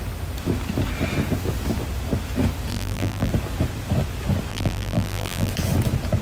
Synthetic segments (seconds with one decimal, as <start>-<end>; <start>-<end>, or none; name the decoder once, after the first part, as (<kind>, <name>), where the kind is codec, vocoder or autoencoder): 2.7-3.3 (vocoder, BigVGAN v2); 4.5-5.5